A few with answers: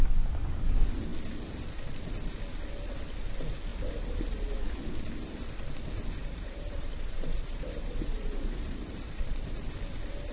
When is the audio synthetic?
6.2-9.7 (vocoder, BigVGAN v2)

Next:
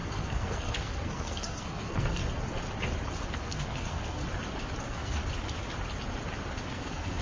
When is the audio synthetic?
0.0-2.2 (codec, SNAC); 3.3-4.2; 4.8-5.2; 6.7-7.2

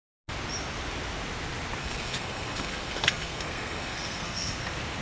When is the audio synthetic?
1.8-4.6 (codec, SNAC)

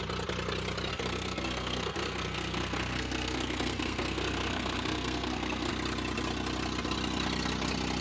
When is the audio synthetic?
0.9-5.7 (codec, SNAC)

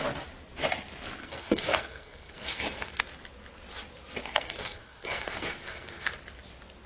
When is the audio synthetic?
1.2-3.0 (codec, SNAC); 4.2-6.1

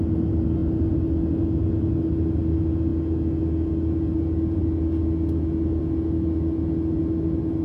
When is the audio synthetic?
none